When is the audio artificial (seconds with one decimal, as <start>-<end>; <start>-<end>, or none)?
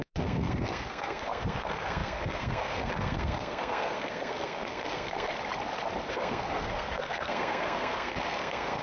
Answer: 0.0-5.3; 6.1-8.8